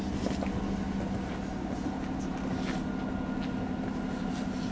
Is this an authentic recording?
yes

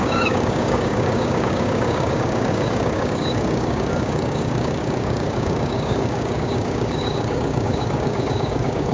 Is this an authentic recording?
no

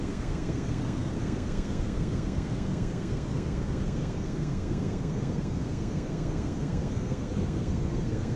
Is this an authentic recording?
no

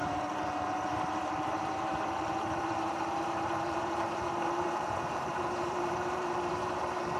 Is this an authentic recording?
no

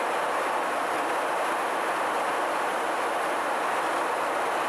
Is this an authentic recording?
yes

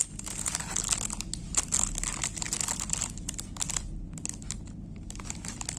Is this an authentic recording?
yes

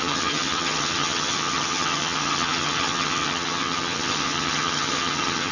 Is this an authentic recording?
no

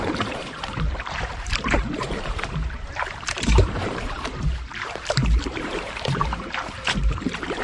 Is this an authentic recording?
no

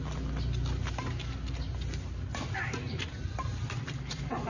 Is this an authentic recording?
yes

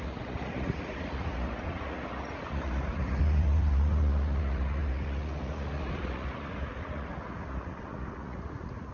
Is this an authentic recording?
no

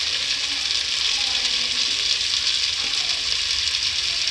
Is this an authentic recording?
yes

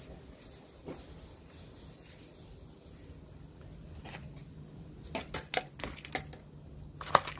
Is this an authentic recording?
yes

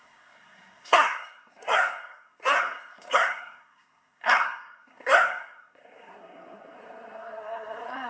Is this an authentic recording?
no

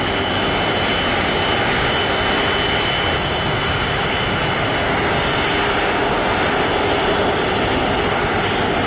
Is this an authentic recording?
yes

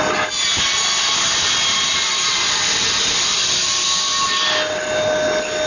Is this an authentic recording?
yes